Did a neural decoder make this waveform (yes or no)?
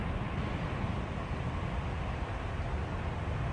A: no